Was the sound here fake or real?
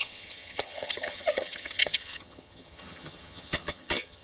fake